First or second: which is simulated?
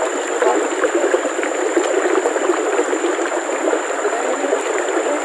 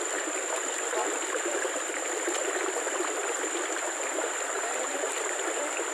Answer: second